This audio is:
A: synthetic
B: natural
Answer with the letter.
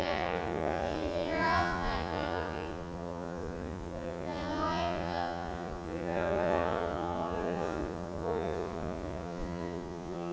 A